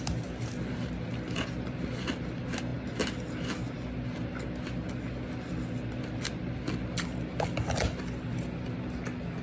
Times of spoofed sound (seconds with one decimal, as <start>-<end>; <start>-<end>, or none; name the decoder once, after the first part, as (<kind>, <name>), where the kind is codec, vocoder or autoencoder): none